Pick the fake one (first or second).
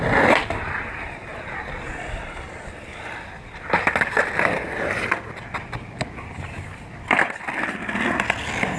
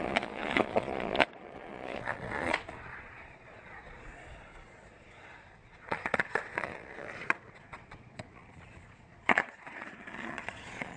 second